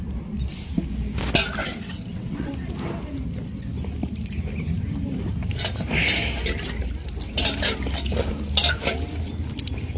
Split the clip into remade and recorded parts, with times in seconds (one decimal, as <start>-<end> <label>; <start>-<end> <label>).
0.0-1.6 recorded; 1.6-2.5 remade; 2.5-10.0 recorded